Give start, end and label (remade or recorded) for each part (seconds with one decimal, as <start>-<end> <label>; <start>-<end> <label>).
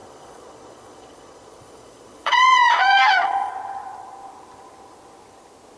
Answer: 0.0-3.5 remade; 3.5-5.8 recorded